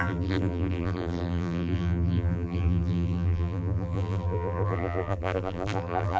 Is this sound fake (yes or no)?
yes